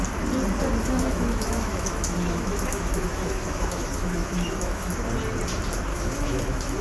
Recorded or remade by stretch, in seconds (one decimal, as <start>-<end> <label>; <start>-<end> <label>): 0.0-0.8 recorded; 0.8-4.9 remade; 4.9-5.9 recorded; 5.9-6.8 remade